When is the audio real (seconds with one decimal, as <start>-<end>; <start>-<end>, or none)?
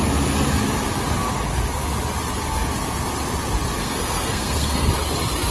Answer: 0.0-3.8; 4.9-5.5